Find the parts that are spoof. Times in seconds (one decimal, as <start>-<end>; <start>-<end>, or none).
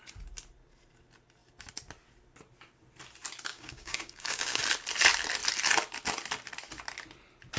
3.5-4.6